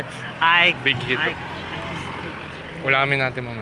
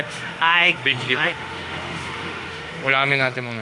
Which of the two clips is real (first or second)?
first